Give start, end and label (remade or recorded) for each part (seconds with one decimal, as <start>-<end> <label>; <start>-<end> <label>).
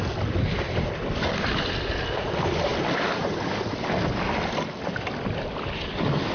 0.0-6.3 recorded